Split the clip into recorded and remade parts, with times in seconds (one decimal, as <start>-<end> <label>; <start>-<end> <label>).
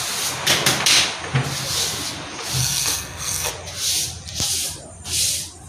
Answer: 0.0-2.6 recorded; 2.6-3.5 remade; 3.5-5.7 recorded